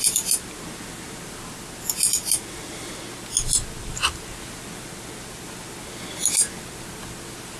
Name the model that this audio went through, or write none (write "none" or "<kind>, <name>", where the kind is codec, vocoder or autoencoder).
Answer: none